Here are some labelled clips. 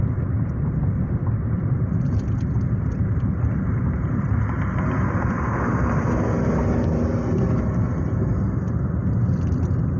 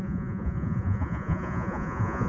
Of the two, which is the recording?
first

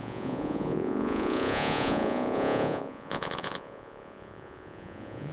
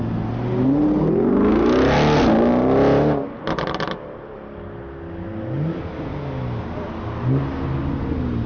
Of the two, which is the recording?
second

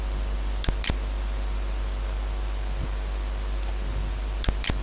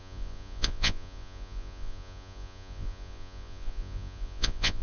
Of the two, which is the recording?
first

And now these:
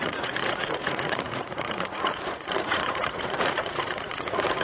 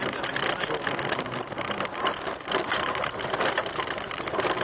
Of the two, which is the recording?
second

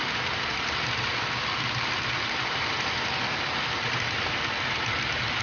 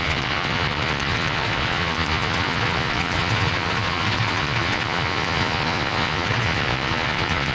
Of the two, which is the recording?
first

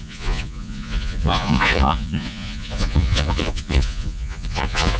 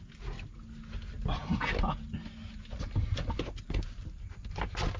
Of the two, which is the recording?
second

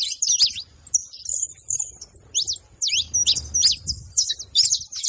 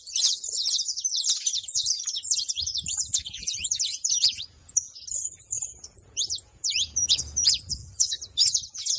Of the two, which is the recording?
first